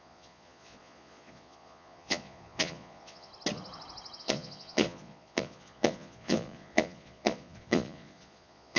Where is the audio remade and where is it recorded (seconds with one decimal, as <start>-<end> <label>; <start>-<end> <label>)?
0.0-3.3 remade; 3.3-4.2 recorded; 4.2-8.8 remade